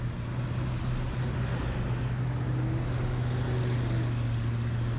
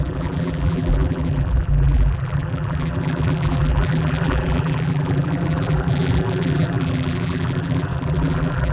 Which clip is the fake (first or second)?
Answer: second